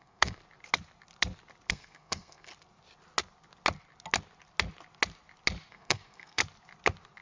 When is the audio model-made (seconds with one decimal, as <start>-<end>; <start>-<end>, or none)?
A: 0.0-0.4; 1.7-2.5; 5.7-6.4